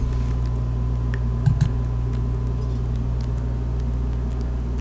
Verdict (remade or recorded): recorded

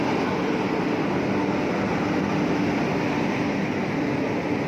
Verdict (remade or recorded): recorded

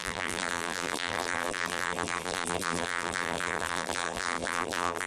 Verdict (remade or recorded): remade